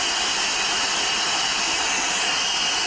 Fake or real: real